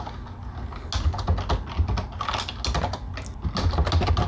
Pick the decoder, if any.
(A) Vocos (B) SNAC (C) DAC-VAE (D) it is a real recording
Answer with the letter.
D